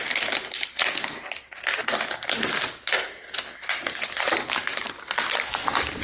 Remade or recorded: recorded